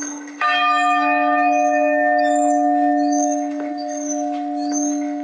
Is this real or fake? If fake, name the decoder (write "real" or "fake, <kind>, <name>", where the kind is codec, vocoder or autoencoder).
fake, autoencoder, DAC-VAE